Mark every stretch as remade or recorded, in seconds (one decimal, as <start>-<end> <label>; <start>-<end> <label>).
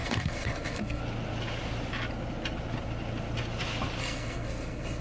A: 0.0-1.0 remade; 1.0-4.0 recorded; 4.0-5.0 remade